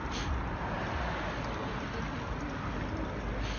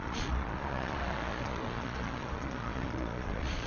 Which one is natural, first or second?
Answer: first